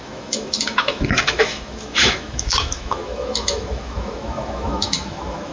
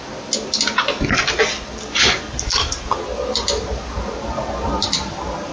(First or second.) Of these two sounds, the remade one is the first